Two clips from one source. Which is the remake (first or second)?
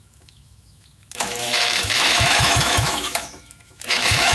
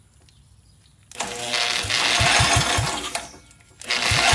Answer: first